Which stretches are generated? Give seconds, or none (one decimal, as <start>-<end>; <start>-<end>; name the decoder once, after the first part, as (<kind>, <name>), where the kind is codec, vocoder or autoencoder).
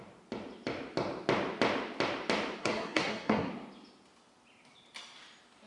2.6-3.5 (codec, SNAC)